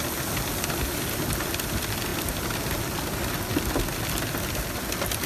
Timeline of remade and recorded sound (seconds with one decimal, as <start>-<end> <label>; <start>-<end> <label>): 0.0-5.3 recorded